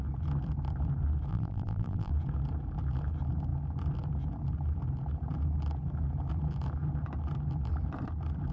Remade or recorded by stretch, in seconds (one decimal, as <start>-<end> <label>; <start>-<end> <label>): 0.0-1.3 recorded; 1.3-2.1 remade; 2.1-8.5 recorded